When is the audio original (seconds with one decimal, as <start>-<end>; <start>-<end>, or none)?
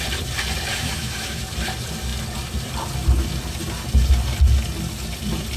0.0-0.7; 1.4-5.6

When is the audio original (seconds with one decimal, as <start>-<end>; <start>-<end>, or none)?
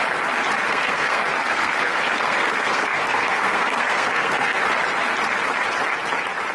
0.0-0.7; 4.6-6.5